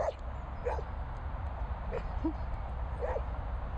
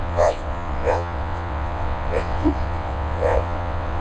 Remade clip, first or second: second